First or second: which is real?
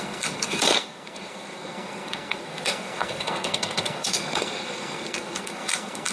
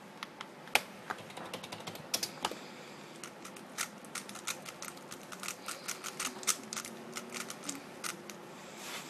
second